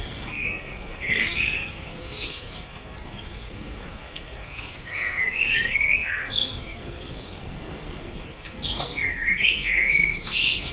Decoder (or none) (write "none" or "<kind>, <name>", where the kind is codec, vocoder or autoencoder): codec, SNAC